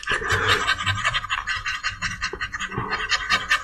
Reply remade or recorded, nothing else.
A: recorded